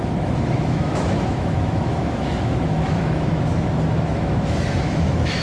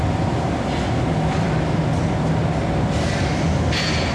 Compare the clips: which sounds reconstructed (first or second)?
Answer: first